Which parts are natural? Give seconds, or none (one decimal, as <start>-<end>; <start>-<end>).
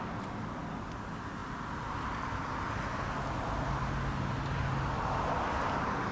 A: 0.0-6.1